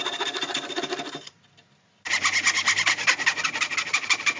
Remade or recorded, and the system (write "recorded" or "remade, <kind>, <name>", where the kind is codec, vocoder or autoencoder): recorded